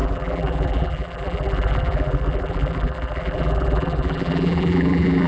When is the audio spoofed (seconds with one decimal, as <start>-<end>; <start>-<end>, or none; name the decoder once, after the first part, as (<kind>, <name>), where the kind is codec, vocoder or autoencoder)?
0.0-5.3 (vocoder, BigVGAN v2)